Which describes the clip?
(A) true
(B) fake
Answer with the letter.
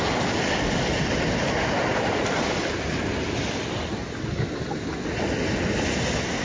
A